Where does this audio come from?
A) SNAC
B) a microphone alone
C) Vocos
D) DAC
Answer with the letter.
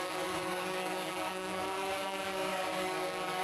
D